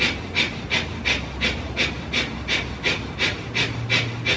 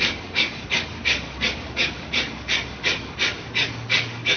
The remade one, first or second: second